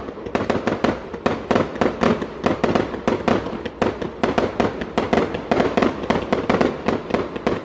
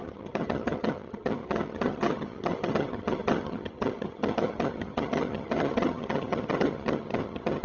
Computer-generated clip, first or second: second